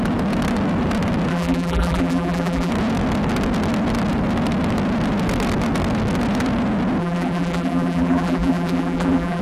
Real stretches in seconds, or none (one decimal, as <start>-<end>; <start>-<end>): 0.0-1.3; 2.7-7.0